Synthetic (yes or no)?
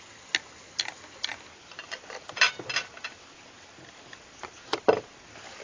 no